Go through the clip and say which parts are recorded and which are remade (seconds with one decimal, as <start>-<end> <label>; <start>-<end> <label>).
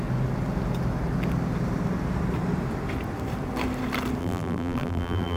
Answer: 0.0-4.2 recorded; 4.2-5.4 remade